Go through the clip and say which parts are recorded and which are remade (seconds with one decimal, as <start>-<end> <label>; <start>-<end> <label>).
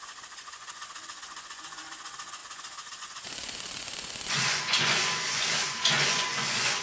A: 0.0-6.8 remade